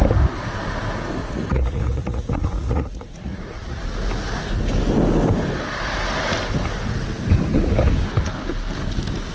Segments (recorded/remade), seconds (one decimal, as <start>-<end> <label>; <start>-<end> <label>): 0.0-1.2 recorded; 1.2-3.8 remade; 3.8-9.3 recorded